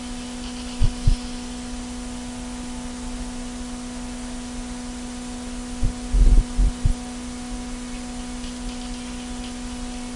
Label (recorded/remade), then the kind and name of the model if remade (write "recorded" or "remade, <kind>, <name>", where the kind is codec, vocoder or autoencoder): recorded